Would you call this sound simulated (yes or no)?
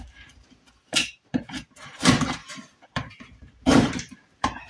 yes